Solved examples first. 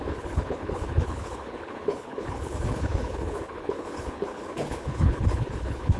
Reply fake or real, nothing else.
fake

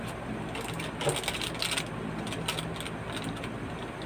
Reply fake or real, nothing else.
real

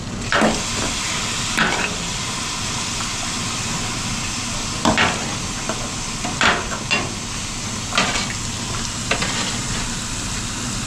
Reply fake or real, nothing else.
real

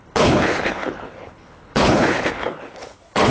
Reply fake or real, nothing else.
fake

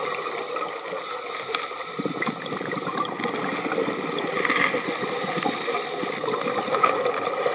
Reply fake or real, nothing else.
real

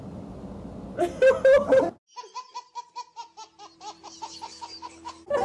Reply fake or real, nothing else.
real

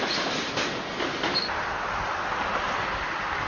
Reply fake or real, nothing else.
real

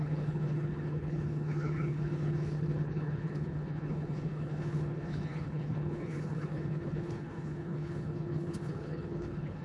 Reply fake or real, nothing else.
fake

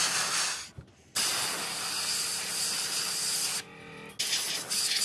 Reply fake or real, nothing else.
real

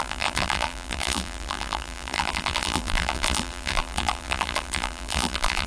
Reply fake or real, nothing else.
fake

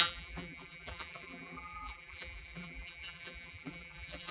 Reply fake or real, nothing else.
fake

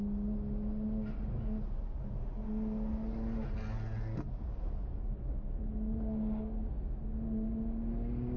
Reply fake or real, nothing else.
real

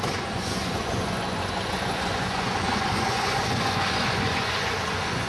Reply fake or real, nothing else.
fake